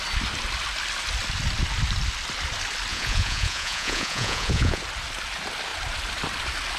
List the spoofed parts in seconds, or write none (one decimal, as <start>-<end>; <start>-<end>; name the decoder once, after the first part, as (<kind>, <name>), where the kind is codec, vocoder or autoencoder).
2.9-4.8 (vocoder, Vocos)